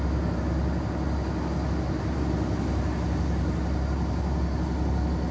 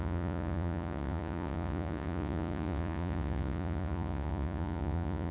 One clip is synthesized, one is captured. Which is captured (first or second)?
first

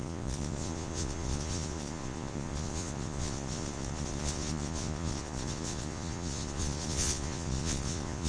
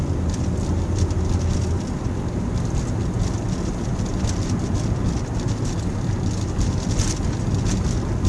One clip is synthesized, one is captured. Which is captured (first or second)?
second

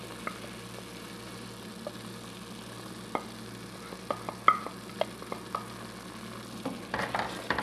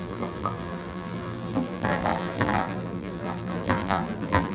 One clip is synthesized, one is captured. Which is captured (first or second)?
first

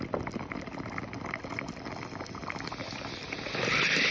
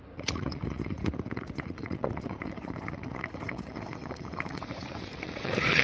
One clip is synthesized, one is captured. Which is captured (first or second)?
first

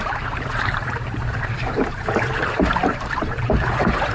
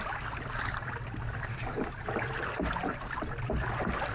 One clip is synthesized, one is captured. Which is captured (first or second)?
second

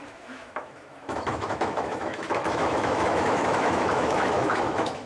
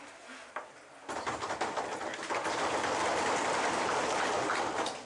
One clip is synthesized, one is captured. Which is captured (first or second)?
second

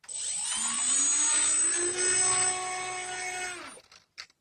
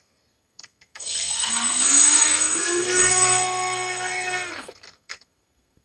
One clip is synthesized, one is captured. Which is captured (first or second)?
first